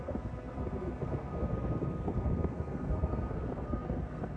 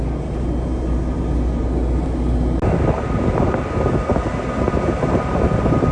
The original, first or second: second